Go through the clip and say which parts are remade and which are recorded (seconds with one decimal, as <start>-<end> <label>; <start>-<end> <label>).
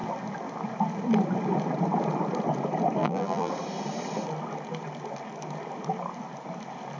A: 0.0-3.0 recorded; 3.0-3.5 remade; 3.5-7.0 recorded